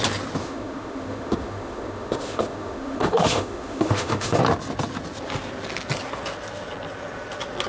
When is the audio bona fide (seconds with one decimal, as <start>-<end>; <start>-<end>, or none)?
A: 0.0-0.4; 4.4-7.7